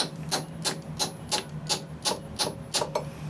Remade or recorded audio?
recorded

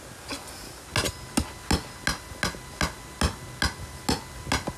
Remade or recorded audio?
recorded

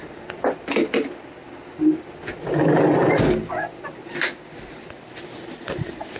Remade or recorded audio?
recorded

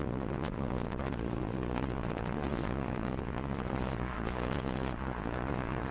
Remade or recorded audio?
remade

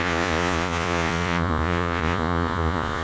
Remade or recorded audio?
remade